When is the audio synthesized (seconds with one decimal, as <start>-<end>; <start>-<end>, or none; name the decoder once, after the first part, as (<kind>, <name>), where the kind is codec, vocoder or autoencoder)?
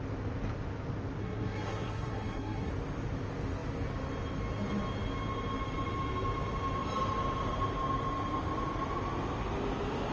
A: 1.2-2.7 (codec, SNAC)